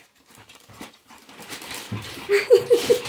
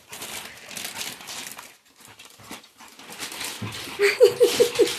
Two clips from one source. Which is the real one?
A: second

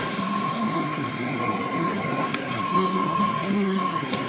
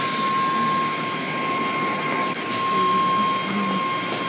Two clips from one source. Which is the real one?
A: second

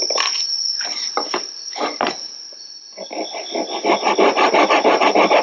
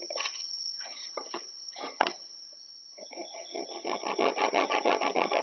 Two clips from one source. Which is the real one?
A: first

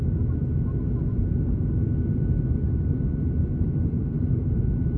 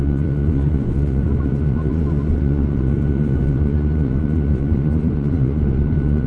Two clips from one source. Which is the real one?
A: first